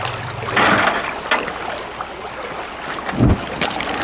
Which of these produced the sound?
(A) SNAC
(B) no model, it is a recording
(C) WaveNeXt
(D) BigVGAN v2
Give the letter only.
B